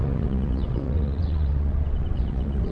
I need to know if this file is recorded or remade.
remade